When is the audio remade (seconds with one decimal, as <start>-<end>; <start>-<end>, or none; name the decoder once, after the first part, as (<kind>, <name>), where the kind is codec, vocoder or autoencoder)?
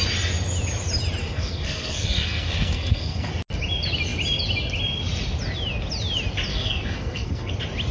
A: 1.2-3.3 (codec, SNAC); 6.5-7.5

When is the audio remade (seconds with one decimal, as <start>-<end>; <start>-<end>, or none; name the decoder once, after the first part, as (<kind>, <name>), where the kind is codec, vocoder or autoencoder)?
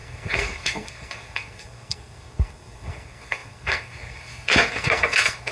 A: 0.0-5.5 (codec, SNAC)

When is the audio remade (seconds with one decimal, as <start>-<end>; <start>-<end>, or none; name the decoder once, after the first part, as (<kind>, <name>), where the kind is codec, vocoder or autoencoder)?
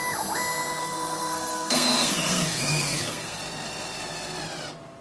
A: 0.8-3.4 (codec, SNAC)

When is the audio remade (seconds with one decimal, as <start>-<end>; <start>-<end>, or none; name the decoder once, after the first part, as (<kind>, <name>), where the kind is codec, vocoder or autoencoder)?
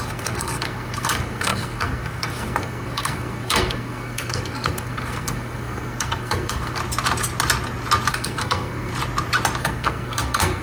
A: 0.0-6.8 (codec, SNAC); 8.1-8.9; 9.6-10.6